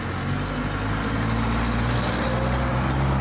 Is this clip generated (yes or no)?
no